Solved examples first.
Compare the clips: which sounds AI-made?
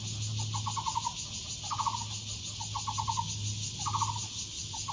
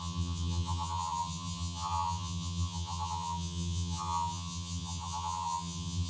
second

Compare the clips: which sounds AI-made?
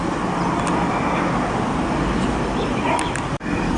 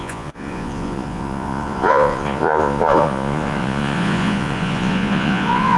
second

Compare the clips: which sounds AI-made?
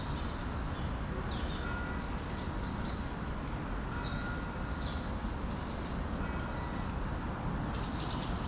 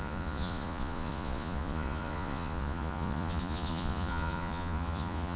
second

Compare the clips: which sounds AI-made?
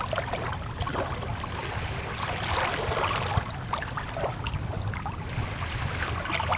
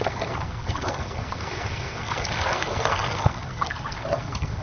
second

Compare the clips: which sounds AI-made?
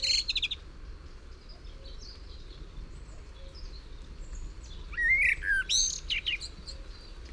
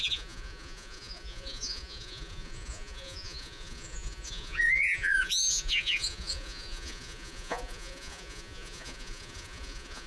second